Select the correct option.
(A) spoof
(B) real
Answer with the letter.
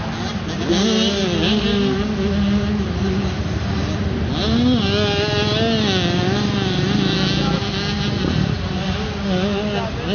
B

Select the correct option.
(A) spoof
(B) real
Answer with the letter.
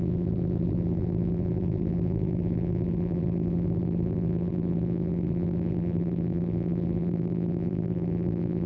A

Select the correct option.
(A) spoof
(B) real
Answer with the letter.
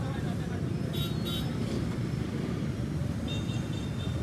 A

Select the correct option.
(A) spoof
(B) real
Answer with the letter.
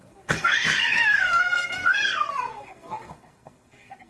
A